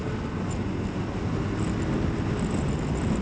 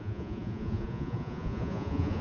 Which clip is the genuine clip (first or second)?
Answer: first